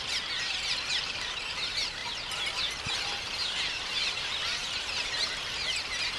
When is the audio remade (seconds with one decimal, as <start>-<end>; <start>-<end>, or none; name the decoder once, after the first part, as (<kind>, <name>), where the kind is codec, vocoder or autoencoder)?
none